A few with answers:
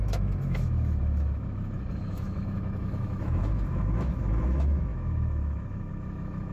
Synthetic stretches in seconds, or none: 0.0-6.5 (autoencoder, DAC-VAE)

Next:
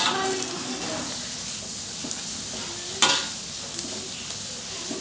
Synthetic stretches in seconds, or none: none

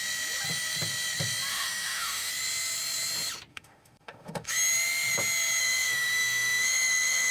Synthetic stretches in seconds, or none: 1.5-2.3 (autoencoder, DAC-VAE); 3.5-4.5; 5.6-7.3

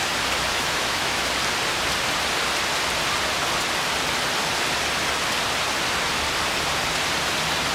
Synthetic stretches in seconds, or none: 0.5-1.3 (autoencoder, DAC-VAE)